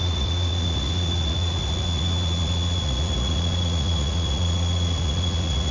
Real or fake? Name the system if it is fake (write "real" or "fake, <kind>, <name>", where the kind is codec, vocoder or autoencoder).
fake, vocoder, Vocos